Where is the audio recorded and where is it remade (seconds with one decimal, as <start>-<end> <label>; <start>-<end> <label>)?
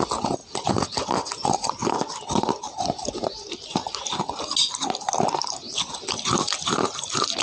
0.0-7.4 recorded